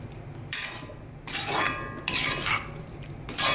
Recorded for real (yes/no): no